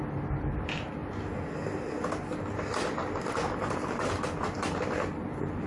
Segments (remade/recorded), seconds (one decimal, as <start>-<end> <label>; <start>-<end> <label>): 0.0-5.7 recorded